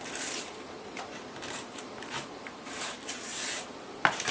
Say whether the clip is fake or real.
fake